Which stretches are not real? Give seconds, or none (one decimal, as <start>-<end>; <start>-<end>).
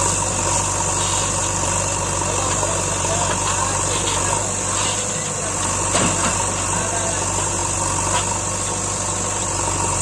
none